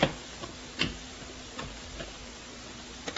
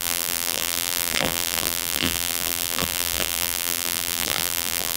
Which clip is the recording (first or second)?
first